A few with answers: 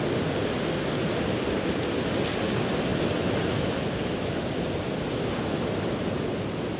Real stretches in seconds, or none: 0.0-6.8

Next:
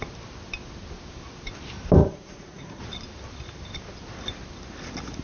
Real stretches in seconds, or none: 0.0-2.0; 2.8-5.2

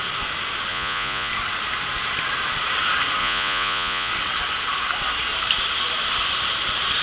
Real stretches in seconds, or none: 0.0-0.7; 1.3-3.2; 4.1-7.0

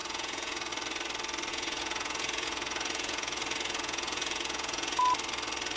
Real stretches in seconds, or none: 0.7-1.5; 5.0-5.8

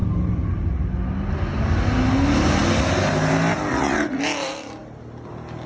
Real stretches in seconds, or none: 0.0-3.7; 4.2-5.7

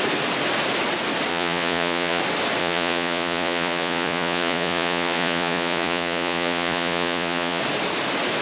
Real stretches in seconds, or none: 0.0-1.3; 2.2-2.6; 7.6-8.4